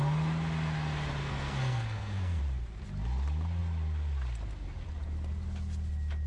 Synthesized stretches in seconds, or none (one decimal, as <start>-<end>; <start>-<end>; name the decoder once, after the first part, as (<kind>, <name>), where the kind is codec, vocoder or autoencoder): 1.2-2.4 (codec, SNAC)